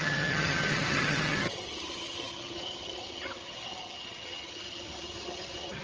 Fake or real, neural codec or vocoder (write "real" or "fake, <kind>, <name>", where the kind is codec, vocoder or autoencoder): fake, vocoder, HiFi-GAN